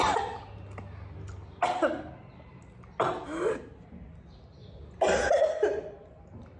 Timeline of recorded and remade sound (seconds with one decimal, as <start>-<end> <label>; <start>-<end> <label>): 0.0-6.6 recorded